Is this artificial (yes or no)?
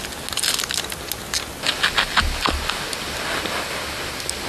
no